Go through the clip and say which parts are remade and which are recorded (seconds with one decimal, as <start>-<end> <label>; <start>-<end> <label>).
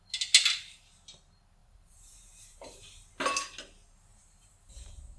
0.0-1.6 recorded; 1.6-3.1 remade; 3.1-4.1 recorded; 4.1-5.2 remade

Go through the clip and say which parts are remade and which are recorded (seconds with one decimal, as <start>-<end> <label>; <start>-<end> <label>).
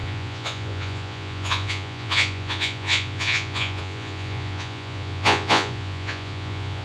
0.0-6.8 remade